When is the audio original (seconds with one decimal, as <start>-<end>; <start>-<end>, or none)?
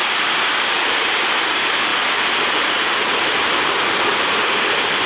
1.3-5.1